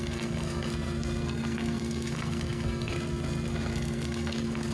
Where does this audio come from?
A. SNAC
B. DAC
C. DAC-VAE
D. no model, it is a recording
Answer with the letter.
A